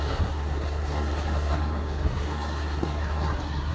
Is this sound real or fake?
fake